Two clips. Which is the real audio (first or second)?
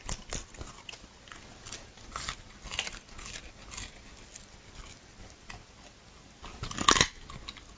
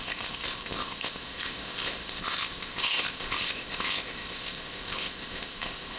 first